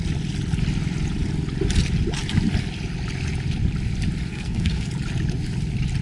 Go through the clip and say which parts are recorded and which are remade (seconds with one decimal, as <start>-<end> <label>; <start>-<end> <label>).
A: 0.0-4.3 recorded; 4.3-4.9 remade; 4.9-6.0 recorded